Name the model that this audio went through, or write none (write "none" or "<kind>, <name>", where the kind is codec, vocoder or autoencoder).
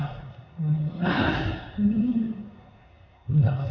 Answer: codec, SNAC